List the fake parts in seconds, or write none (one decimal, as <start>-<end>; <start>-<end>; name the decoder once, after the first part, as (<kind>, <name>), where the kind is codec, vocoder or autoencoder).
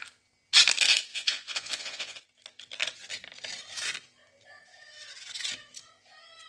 1.1-2.2 (vocoder, Vocos)